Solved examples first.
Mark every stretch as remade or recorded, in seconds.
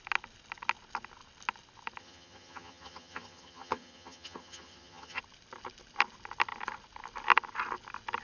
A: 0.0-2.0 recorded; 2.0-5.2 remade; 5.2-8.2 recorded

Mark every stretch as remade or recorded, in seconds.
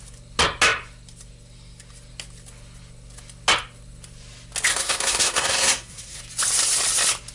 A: 0.0-4.7 recorded; 4.7-6.2 remade; 6.2-7.3 recorded